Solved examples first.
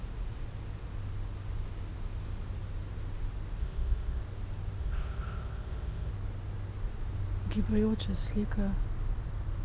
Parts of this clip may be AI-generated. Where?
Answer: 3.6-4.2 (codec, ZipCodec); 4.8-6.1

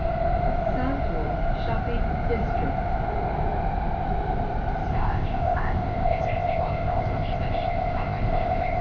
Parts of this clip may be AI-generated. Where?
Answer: 4.9-8.8 (codec, ZipCodec)

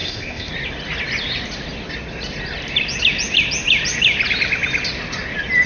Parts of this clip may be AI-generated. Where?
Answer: 0.0-0.5 (codec, ZipCodec)

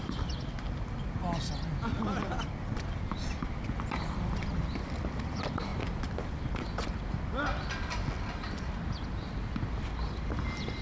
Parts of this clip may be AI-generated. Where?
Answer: none

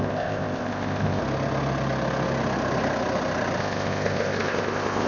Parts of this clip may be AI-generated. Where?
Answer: 0.0-1.2 (codec, ZipCodec); 3.6-5.1

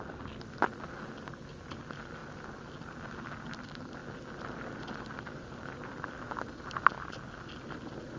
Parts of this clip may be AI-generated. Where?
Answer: none